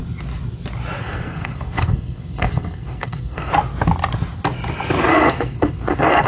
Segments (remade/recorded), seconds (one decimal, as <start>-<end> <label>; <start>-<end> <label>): 0.0-1.0 recorded; 1.0-3.5 remade; 3.5-5.1 recorded; 5.1-6.3 remade